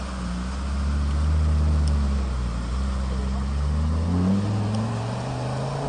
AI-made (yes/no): no